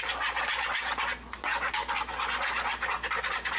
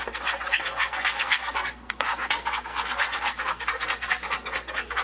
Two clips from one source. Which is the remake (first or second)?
second